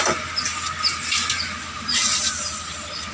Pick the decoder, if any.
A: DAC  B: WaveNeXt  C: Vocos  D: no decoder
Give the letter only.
D